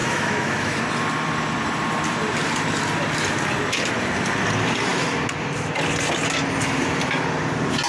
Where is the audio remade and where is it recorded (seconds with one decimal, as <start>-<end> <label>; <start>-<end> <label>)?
0.0-0.8 remade; 0.8-7.9 recorded